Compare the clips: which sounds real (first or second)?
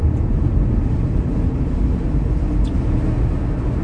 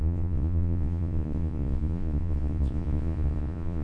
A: first